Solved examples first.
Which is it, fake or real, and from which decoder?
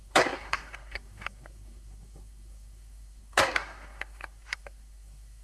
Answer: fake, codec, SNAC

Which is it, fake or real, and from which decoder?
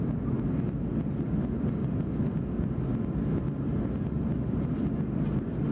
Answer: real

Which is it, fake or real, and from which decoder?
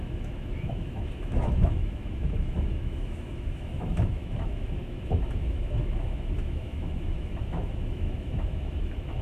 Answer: fake, autoencoder, DAC-VAE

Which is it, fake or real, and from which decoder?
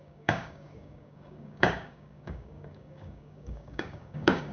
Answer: fake, codec, DAC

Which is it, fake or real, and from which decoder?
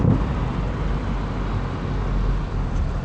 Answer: real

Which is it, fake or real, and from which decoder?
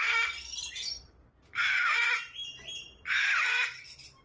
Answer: fake, vocoder, BigVGAN v2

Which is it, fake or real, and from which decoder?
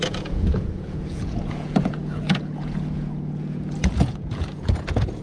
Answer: fake, vocoder, Vocos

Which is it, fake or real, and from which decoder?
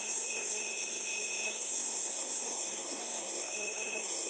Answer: fake, codec, SNAC